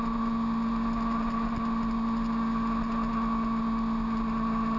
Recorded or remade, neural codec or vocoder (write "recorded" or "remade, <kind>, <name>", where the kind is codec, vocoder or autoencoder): recorded